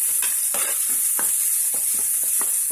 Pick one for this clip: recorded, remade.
recorded